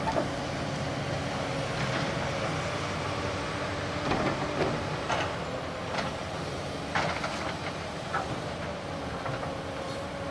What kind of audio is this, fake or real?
real